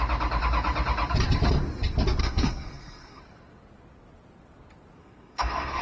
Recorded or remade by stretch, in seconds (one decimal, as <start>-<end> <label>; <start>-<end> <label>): 0.0-2.2 recorded; 2.2-3.2 remade; 3.2-5.0 recorded; 5.0-5.8 remade